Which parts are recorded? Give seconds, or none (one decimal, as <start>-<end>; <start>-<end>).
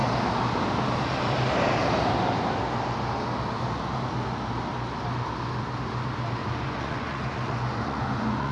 0.0-6.4